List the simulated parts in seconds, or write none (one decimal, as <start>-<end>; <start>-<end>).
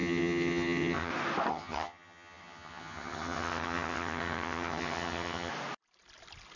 0.0-1.1; 1.5-5.5